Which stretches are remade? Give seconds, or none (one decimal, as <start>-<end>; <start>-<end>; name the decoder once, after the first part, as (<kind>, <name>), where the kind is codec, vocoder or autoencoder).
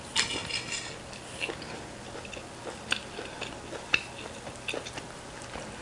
none